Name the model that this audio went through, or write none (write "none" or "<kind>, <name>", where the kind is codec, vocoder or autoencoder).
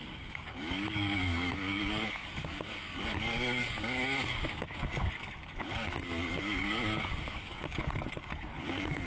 codec, DAC